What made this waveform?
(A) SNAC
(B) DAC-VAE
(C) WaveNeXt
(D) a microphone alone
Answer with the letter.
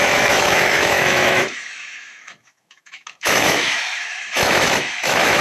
B